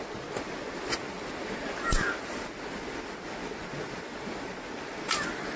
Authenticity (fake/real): real